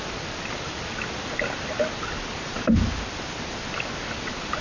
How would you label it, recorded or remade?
recorded